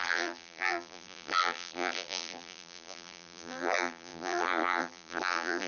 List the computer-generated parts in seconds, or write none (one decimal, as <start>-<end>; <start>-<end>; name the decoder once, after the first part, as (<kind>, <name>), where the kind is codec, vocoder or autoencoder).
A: 0.0-5.7 (vocoder, BigVGAN v2)